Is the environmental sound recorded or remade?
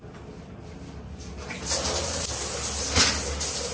recorded